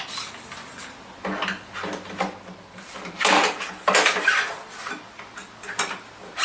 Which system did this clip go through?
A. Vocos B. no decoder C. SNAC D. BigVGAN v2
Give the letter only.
B